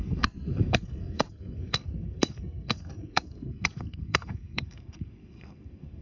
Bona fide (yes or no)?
no